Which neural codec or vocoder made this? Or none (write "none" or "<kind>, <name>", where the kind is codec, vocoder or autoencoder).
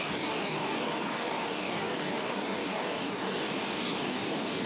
codec, DAC